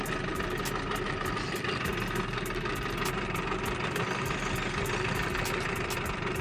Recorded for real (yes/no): yes